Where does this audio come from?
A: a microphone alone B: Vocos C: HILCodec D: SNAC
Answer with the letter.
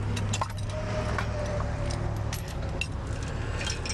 A